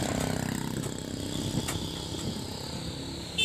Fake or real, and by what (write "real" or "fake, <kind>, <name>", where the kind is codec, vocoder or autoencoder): real